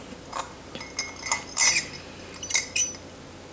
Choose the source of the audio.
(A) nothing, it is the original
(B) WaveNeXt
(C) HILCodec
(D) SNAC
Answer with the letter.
A